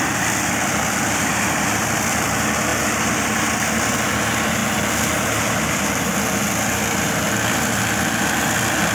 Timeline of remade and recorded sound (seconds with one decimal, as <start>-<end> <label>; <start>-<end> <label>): 0.0-8.9 recorded